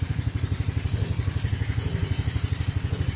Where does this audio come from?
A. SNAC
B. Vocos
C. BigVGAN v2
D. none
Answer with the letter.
D